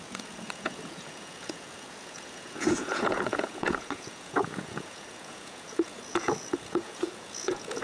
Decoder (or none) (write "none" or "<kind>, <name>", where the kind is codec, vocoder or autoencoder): vocoder, Vocos